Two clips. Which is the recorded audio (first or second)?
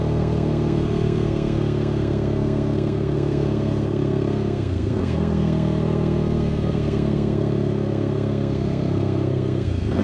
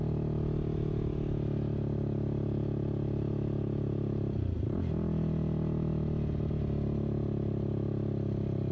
second